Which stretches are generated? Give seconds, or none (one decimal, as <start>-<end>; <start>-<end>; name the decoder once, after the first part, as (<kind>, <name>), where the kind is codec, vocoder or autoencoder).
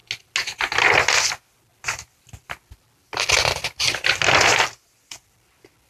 none